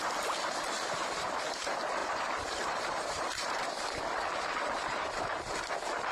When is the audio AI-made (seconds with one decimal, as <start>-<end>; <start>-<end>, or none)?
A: 2.0-4.0